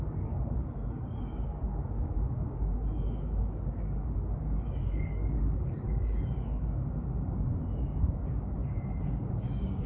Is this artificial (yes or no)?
yes